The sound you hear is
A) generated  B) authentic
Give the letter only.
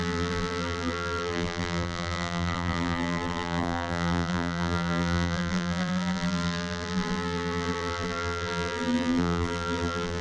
A